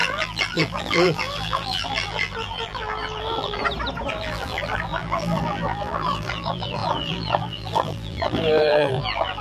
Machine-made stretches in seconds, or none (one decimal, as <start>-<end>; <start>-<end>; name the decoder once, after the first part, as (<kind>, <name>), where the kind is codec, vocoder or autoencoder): 0.0-3.6 (vocoder, BigVGAN v2); 4.1-9.4